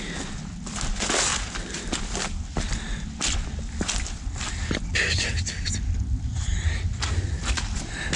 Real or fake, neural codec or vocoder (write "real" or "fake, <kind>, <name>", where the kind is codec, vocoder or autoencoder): real